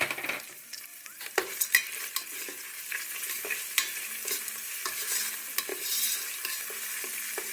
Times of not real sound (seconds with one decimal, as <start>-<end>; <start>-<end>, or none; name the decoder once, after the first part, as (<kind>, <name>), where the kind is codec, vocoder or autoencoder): 0.9-4.5 (vocoder, BigVGAN v2)